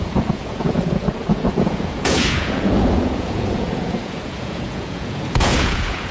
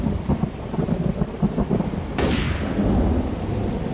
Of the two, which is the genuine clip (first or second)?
second